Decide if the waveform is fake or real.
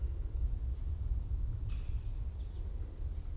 real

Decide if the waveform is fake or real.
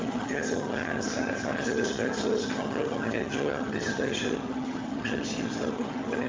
fake